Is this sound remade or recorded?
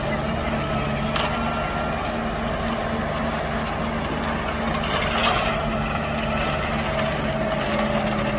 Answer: recorded